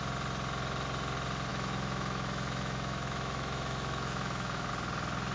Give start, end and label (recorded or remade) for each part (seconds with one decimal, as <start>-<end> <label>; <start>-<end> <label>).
0.0-1.5 recorded; 1.5-4.7 remade; 4.7-5.3 recorded